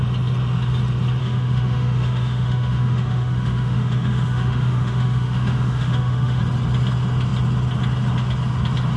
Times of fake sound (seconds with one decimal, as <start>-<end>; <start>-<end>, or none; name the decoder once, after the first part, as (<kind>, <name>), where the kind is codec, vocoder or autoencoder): 1.2-6.4 (autoencoder, DAC-VAE)